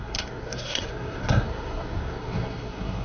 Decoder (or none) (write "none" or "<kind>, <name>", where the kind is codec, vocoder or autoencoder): codec, SNAC